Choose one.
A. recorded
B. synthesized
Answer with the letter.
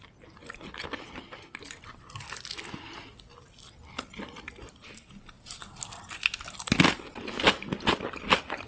A